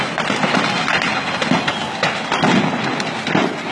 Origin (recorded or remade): recorded